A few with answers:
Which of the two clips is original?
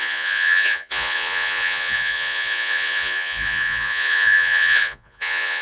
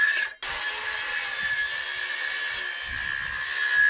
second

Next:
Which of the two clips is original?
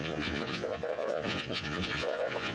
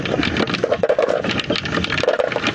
second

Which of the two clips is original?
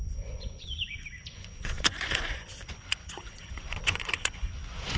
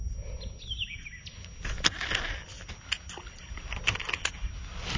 second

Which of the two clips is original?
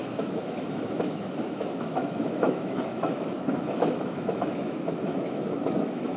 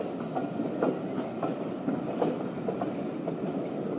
second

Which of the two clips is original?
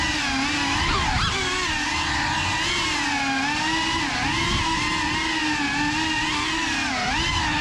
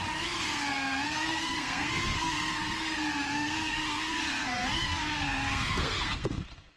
first